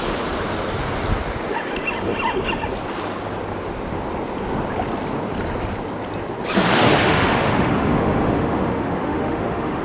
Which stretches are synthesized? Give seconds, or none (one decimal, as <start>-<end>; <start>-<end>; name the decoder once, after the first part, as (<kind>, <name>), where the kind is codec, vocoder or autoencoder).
7.0-9.8 (autoencoder, DAC-VAE)